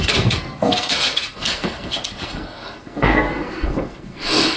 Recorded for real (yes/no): no